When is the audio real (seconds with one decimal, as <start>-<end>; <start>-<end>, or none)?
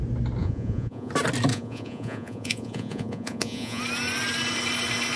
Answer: 0.0-0.4; 1.1-1.5; 3.8-5.2